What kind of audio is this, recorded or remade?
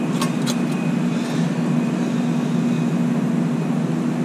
recorded